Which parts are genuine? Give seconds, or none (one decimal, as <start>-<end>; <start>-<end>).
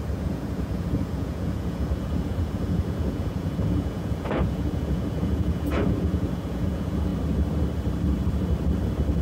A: 7.1-9.2